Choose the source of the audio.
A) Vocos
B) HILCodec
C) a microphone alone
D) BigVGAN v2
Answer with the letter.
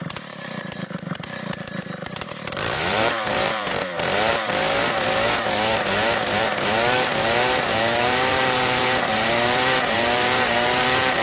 D